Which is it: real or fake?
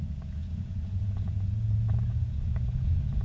fake